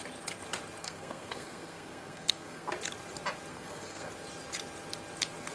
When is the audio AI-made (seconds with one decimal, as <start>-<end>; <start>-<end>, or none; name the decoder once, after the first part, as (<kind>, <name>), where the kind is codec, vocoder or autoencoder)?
0.8-2.7 (codec, SNAC); 3.5-4.1